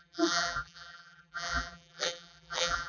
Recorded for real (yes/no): no